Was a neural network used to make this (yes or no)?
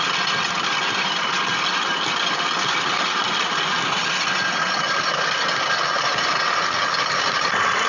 no